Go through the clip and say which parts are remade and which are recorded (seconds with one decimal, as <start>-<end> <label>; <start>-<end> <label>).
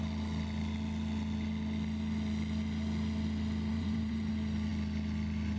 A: 0.0-3.7 recorded; 3.7-4.3 remade; 4.3-5.6 recorded